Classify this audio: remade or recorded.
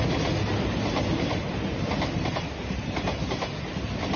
recorded